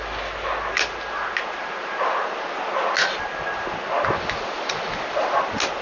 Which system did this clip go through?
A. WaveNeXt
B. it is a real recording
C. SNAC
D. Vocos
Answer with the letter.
B